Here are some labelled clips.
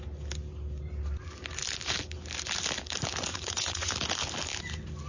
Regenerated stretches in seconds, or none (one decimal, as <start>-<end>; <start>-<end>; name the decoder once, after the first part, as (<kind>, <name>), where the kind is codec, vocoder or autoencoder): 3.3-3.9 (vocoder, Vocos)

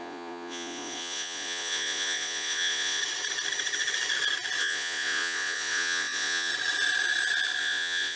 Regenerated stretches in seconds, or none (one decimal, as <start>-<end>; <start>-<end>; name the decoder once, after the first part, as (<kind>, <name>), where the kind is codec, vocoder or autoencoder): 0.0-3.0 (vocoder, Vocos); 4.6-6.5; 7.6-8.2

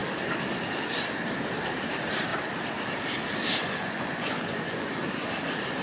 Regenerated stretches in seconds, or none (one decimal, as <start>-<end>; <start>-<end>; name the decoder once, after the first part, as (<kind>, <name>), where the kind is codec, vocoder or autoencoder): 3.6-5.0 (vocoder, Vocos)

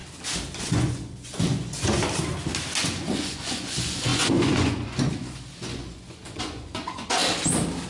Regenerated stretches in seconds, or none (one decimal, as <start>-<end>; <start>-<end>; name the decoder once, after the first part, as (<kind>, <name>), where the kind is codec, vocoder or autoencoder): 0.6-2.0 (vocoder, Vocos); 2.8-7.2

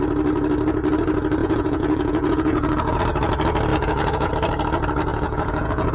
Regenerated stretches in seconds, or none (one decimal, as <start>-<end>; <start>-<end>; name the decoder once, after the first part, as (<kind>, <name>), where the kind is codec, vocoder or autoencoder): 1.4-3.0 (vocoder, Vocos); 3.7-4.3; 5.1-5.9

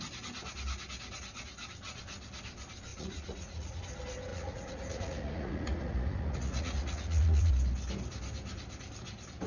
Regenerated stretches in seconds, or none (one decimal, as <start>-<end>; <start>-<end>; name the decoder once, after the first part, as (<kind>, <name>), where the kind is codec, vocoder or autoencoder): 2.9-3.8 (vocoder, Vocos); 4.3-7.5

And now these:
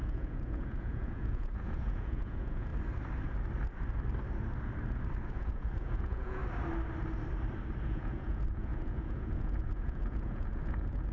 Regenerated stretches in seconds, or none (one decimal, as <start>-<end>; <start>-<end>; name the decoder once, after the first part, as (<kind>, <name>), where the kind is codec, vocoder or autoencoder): 0.0-2.7 (vocoder, Vocos); 5.3-6.4; 7.8-11.1